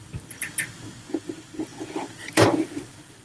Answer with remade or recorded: remade